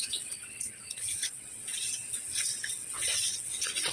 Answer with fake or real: fake